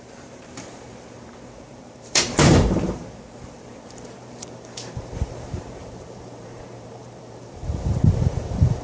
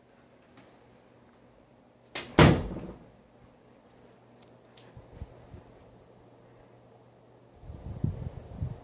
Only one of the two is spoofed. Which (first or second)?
first